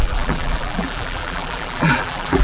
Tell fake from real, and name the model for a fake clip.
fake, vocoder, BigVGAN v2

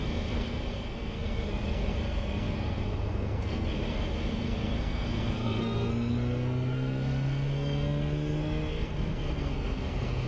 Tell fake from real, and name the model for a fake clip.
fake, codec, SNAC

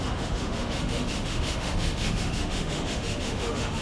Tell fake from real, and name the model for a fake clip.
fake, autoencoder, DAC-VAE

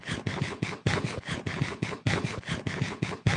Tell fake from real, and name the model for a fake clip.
fake, codec, HILCodec